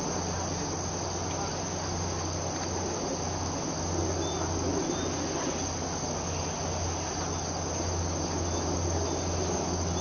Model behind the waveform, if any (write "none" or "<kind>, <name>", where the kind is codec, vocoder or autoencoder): none